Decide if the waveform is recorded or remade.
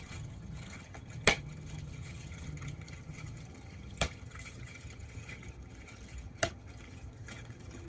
remade